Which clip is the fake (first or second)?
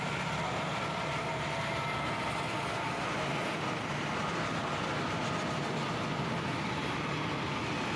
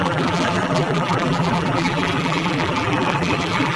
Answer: second